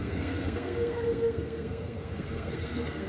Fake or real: fake